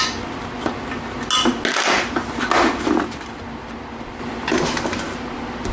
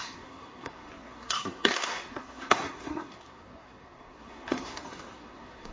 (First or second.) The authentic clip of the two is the first